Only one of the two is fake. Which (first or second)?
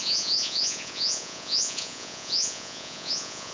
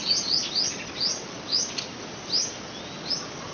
first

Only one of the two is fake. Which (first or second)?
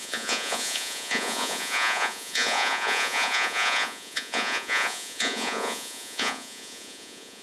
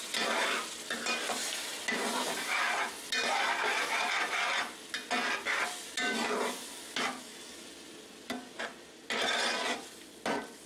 first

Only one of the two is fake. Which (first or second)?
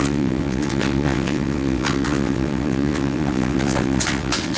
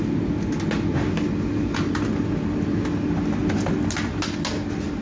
first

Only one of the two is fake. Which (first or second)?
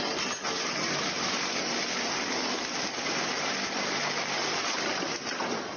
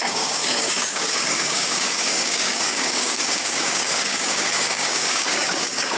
second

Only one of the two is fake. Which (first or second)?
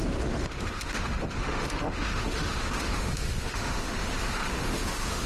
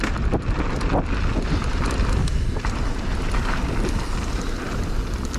first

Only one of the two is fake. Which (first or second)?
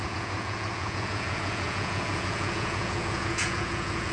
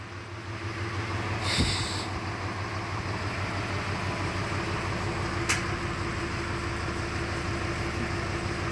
first